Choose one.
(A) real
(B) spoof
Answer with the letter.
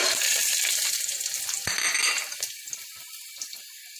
B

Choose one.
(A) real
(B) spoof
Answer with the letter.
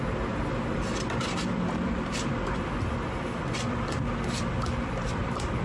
B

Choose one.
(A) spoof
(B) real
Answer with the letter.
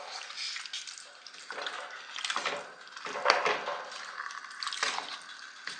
B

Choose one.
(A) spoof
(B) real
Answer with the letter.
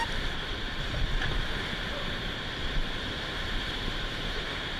A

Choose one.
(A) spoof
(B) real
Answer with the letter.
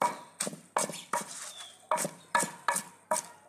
B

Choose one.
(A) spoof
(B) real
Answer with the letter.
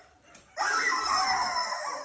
B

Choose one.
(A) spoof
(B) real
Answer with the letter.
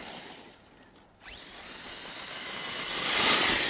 B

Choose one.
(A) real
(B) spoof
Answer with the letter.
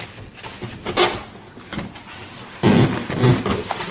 A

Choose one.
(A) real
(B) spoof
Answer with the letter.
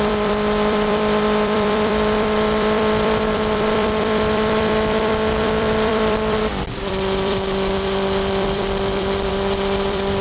B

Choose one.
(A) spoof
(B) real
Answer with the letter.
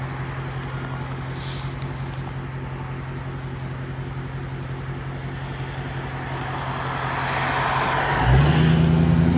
B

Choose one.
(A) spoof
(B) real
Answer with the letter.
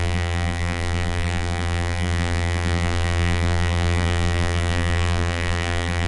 A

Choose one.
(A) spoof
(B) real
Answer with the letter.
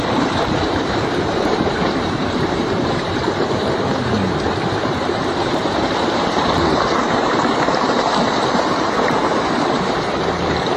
A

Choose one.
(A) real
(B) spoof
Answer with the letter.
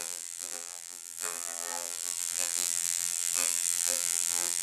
B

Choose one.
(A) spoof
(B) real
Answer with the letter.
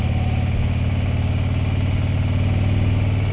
B